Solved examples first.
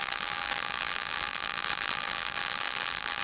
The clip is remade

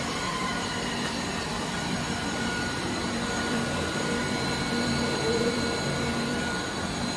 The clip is remade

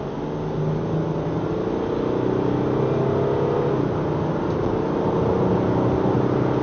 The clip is recorded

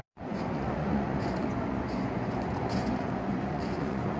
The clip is remade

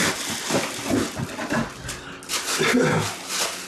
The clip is recorded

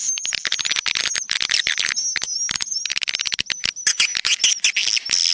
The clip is recorded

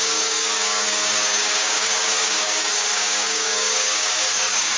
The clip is remade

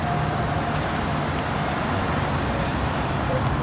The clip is recorded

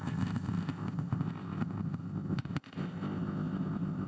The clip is remade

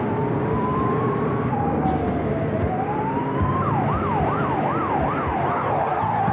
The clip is recorded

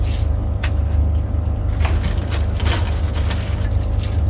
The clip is recorded